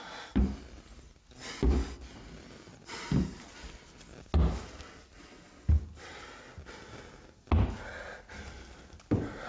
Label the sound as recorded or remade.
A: recorded